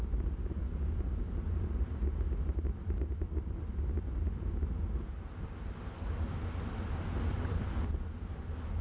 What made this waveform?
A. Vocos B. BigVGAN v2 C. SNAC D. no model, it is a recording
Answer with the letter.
D